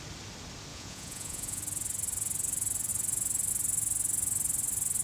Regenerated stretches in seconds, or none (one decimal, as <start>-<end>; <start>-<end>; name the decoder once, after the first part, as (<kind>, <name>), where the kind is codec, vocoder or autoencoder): 0.7-1.6 (vocoder, Vocos)